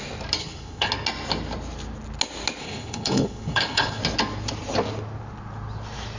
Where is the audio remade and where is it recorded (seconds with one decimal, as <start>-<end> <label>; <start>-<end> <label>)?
0.0-0.4 recorded; 0.4-0.9 remade; 0.9-2.6 recorded; 2.6-4.0 remade; 4.0-6.2 recorded